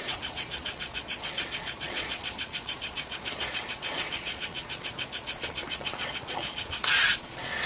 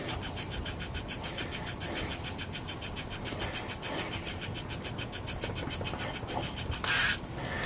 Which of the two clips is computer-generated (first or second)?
first